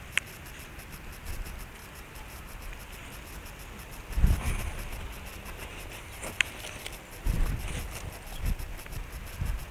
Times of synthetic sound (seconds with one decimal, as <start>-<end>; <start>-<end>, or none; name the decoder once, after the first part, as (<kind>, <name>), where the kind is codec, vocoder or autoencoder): 1.8-2.8 (vocoder, BigVGAN v2); 5.6-6.2